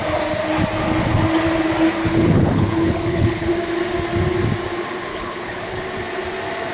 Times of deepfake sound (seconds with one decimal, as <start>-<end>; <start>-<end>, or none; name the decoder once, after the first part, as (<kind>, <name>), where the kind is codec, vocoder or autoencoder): 2.0-3.5 (codec, HILCodec); 5.1-5.8